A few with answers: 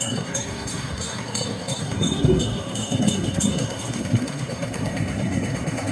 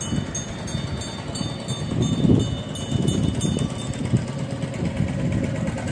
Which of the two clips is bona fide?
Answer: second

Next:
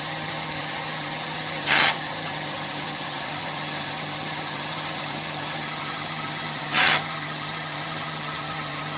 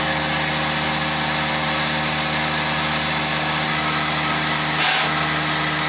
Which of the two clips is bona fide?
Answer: second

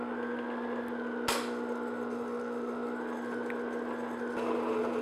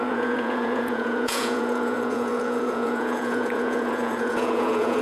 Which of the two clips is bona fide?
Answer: first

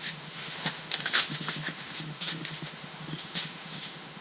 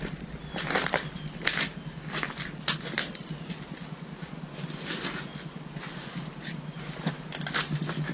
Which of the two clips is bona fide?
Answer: second